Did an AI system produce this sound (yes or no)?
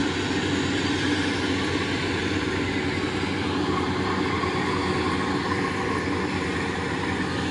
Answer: no